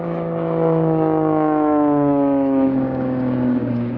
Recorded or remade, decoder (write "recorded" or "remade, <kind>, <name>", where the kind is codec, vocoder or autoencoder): remade, codec, DAC